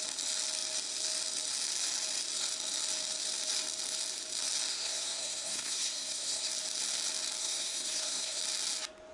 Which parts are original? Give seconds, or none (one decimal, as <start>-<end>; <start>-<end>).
0.0-4.7; 6.5-7.4; 8.4-9.1